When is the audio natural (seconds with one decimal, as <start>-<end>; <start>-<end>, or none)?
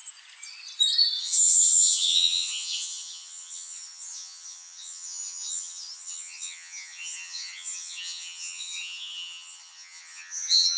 0.0-1.2